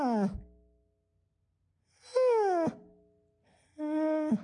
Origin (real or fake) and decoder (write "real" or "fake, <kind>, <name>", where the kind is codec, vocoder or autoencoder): real